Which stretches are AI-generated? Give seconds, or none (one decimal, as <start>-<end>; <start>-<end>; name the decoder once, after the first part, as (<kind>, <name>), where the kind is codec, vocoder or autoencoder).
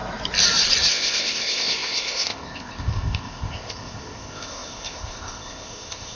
0.9-6.2 (codec, ZipCodec)